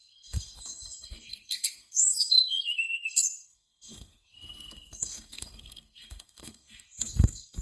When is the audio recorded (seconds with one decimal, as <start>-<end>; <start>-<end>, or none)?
none